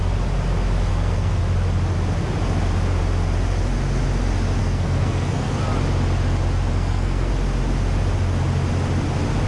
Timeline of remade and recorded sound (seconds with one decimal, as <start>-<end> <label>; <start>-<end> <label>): 0.0-0.9 recorded; 0.9-1.4 remade; 1.4-4.6 recorded; 4.6-5.6 remade; 5.6-6.7 recorded; 6.7-7.3 remade; 7.3-9.5 recorded